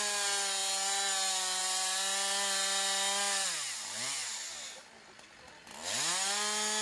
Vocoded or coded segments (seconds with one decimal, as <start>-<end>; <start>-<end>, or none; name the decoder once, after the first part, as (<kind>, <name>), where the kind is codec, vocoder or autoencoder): none